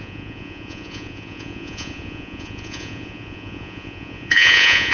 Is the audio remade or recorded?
remade